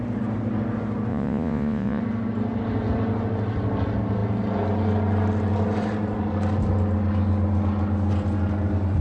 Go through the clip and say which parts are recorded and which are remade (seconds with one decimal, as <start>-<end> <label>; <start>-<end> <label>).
0.0-1.1 recorded; 1.1-2.0 remade; 2.0-9.0 recorded